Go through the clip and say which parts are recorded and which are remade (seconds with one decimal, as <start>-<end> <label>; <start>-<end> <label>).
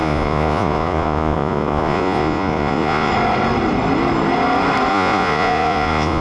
0.0-3.1 remade; 3.1-4.9 recorded; 4.9-6.2 remade